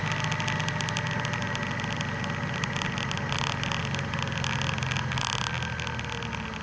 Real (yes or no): yes